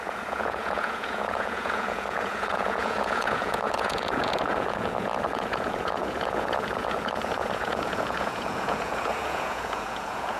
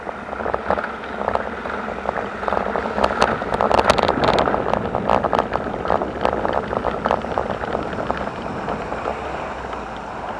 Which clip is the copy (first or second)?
first